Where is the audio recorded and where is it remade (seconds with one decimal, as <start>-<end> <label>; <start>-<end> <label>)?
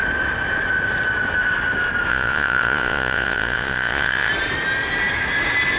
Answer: 0.0-2.1 recorded; 2.1-4.3 remade; 4.3-5.8 recorded